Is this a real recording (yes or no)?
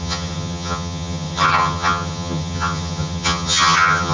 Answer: no